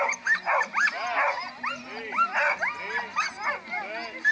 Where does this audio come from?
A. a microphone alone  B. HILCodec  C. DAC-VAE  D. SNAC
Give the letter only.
A